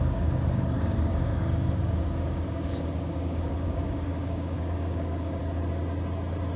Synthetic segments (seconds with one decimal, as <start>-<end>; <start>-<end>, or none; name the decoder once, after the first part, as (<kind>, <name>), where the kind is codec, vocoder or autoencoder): 0.0-5.4 (codec, DAC)